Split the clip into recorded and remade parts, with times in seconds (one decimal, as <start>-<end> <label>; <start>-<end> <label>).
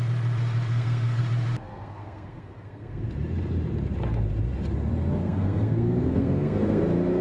0.0-0.7 recorded; 0.7-1.2 remade; 1.2-1.6 recorded; 1.6-3.1 remade; 3.1-5.2 recorded; 5.2-6.8 remade; 6.8-7.2 recorded